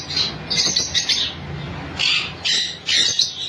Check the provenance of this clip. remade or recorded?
recorded